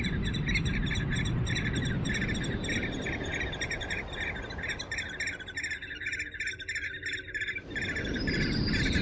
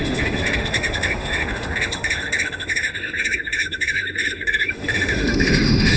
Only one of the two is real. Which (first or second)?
first